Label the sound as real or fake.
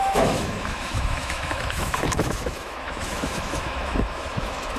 fake